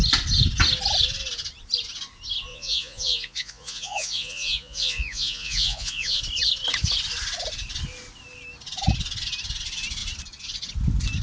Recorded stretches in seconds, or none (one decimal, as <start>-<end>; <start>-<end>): 0.0-2.5; 6.2-11.2

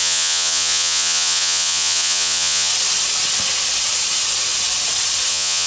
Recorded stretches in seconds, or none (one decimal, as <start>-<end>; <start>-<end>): 2.7-5.3